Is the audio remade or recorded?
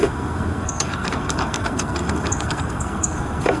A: remade